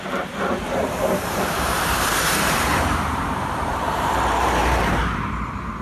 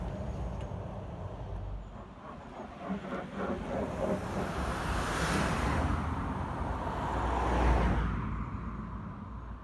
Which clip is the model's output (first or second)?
first